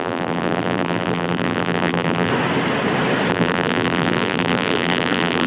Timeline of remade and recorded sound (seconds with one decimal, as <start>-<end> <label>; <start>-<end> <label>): 0.0-2.3 remade; 2.3-3.3 recorded; 3.3-5.5 remade